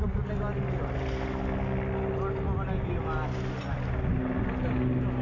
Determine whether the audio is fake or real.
real